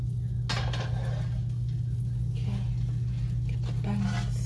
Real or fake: real